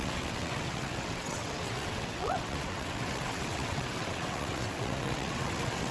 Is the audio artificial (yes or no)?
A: yes